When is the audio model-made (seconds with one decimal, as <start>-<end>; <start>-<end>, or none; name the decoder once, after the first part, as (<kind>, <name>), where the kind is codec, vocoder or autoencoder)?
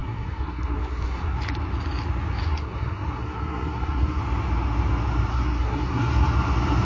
0.0-1.4 (codec, SNAC); 2.4-4.2; 5.3-6.3